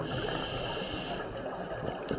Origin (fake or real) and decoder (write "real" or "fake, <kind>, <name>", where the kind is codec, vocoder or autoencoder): real